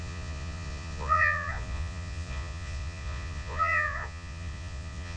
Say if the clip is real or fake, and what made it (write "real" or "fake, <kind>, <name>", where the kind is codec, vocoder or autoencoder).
fake, vocoder, Vocos